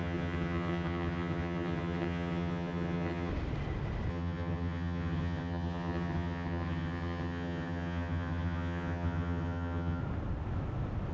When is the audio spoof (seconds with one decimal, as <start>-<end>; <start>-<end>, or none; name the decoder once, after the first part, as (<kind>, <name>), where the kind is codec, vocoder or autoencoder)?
0.0-3.3 (vocoder, HiFi-GAN); 4.1-10.0